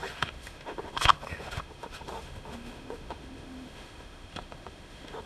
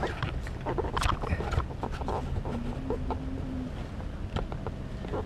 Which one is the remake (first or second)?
first